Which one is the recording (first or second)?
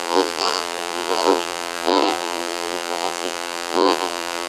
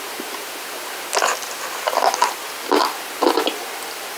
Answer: second